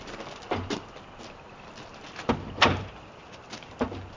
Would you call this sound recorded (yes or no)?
yes